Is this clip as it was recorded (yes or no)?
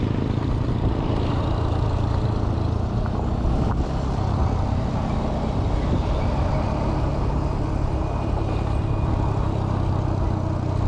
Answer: yes